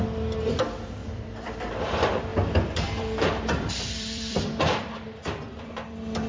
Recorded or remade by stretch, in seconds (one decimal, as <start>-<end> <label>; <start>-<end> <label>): 0.0-1.0 recorded; 1.0-1.7 remade; 1.7-2.3 recorded; 2.3-6.3 remade